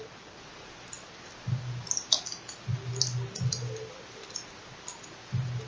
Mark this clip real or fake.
real